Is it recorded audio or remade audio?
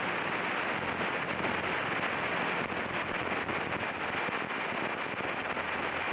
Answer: recorded